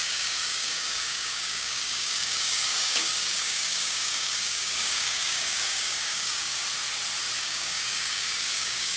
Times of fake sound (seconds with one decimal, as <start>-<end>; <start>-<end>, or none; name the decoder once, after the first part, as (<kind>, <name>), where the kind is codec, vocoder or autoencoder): 0.0-6.6 (codec, DAC); 7.4-9.0